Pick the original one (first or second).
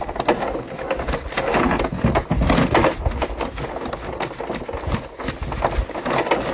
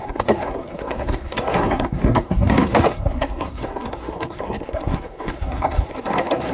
first